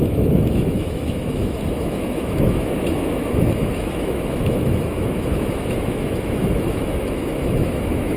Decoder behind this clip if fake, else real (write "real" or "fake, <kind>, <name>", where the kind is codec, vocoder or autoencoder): fake, autoencoder, DAC-VAE